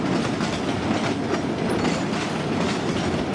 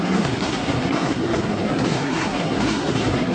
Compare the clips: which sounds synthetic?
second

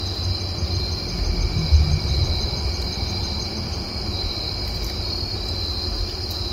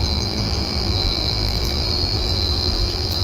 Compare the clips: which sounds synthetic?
second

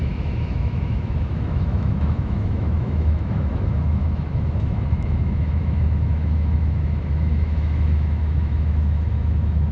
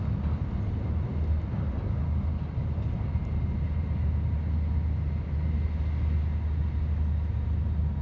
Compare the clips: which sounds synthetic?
first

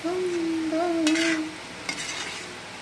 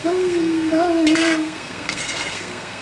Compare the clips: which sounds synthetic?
second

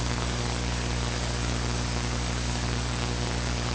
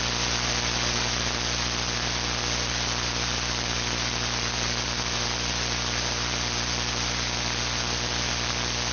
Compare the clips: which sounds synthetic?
first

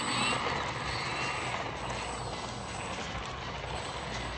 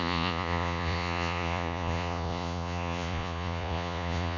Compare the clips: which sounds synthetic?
second